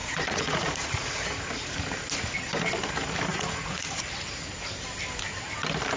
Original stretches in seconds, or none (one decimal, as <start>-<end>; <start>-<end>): 1.4-3.3; 4.0-6.0